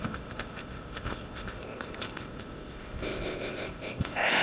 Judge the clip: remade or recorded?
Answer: remade